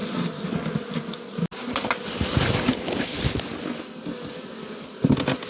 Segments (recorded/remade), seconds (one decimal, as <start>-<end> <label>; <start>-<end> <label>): 0.0-5.5 recorded